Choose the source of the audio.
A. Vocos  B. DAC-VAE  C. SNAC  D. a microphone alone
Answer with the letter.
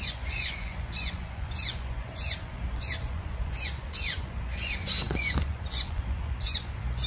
A